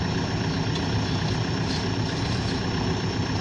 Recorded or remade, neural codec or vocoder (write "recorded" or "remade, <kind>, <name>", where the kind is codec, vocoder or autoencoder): recorded